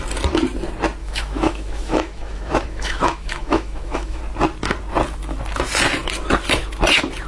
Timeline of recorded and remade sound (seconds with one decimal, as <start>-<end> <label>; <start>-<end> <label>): 0.0-1.0 recorded; 1.0-4.2 remade; 4.2-7.3 recorded